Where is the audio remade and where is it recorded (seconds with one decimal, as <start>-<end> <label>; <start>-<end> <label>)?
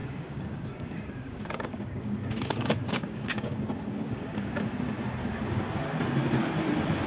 0.0-3.6 remade; 3.6-4.0 recorded; 4.0-4.7 remade; 4.7-7.1 recorded